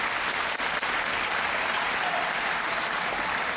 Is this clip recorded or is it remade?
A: recorded